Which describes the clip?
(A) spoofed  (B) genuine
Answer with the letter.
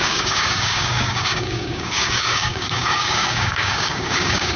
A